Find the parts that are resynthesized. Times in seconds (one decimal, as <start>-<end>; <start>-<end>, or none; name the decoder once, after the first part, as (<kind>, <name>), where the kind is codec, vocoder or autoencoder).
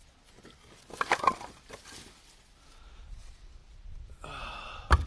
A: 3.1-3.6 (vocoder, Vocos)